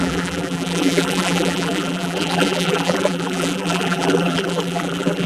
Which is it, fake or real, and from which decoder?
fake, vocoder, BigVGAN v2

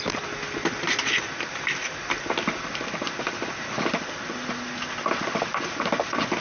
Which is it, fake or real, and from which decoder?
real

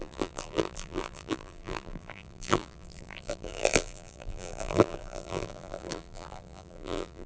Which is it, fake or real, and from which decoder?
fake, vocoder, BigVGAN v2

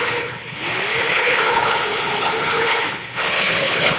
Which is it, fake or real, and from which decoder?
fake, codec, HILCodec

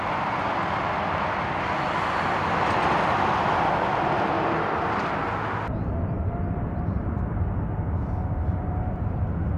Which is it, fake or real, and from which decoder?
real